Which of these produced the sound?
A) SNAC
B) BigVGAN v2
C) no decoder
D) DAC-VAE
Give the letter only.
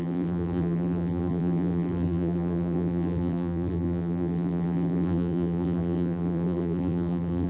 B